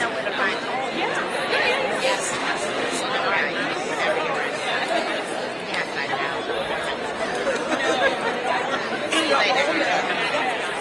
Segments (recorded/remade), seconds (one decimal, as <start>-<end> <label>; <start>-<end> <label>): 0.0-2.4 recorded; 2.4-3.0 remade; 3.0-10.8 recorded